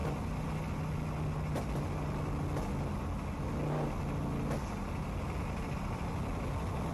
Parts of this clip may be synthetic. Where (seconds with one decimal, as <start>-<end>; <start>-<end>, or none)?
none